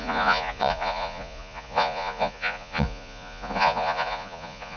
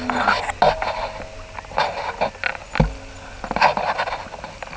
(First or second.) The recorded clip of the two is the second